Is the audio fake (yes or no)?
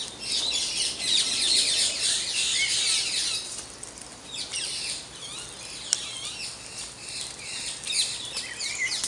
no